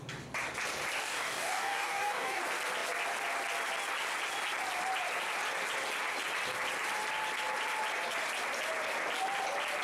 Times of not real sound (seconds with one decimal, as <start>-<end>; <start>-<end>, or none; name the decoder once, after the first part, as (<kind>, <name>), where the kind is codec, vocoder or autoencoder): 1.0-2.4 (codec, DAC)